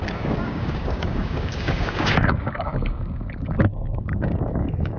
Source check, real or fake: fake